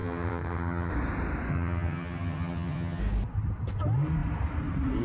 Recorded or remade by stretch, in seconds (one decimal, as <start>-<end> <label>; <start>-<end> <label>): 0.0-0.9 remade; 0.9-1.5 recorded; 1.5-3.0 remade; 3.0-5.0 recorded